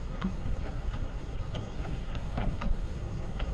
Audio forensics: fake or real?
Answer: fake